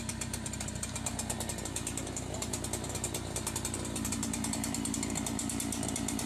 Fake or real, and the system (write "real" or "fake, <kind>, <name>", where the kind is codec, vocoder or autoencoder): real